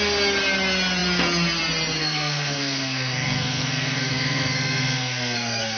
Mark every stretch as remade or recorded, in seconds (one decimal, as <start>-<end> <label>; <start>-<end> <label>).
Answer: 0.0-2.0 recorded; 2.0-5.8 remade